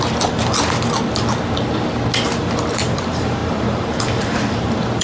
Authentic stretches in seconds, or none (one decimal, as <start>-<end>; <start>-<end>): 0.4-2.3